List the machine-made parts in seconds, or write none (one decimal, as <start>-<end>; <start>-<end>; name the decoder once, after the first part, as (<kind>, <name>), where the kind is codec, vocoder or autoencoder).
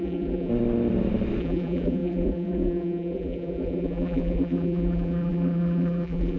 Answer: 0.0-0.5 (vocoder, BigVGAN v2); 1.4-6.4